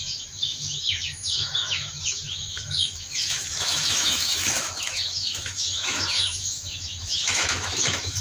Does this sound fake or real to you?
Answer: fake